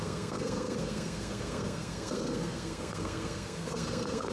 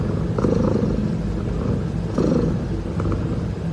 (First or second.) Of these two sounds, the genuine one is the second